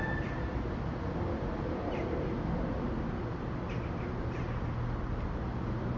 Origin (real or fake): real